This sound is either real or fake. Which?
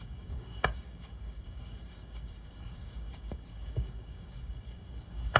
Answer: fake